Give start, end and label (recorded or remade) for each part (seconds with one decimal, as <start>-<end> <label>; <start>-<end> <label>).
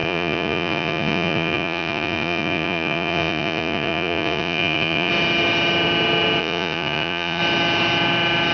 0.0-5.1 remade; 5.1-6.4 recorded; 6.4-7.4 remade; 7.4-8.5 recorded